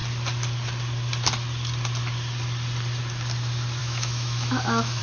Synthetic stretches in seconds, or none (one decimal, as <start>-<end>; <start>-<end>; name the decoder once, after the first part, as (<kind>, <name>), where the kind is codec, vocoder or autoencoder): 3.8-5.0 (autoencoder, DAC-VAE)